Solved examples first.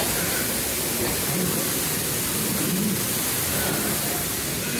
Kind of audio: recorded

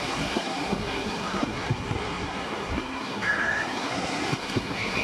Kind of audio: remade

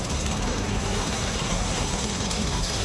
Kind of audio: remade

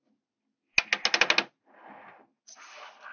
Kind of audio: recorded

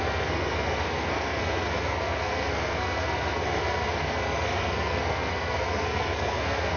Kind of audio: remade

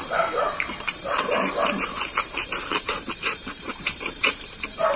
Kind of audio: remade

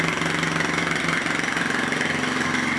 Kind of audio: recorded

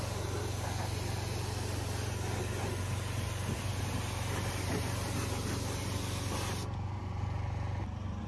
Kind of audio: recorded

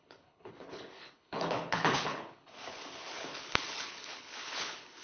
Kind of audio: remade